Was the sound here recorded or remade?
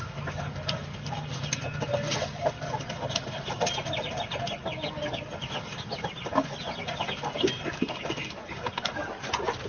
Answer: recorded